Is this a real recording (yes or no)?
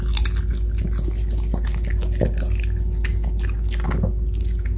yes